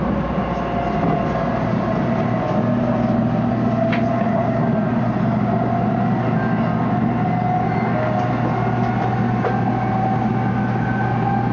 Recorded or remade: recorded